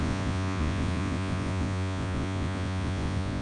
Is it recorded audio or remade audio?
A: remade